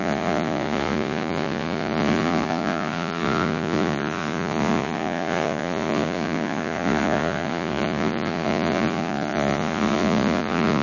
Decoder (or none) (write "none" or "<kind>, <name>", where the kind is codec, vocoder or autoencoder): vocoder, Vocos